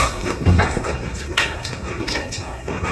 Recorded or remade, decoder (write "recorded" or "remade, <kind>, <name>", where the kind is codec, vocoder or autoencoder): remade, codec, SNAC